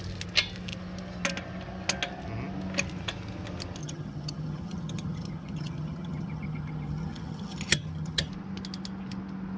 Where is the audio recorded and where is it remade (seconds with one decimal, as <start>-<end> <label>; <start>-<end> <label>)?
0.0-3.8 recorded; 3.8-8.3 remade; 8.3-9.6 recorded